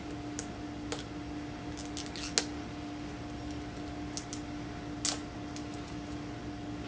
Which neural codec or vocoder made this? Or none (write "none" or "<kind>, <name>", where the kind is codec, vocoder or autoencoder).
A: none